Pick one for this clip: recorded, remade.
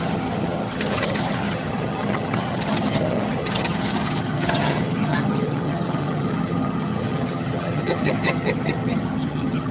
remade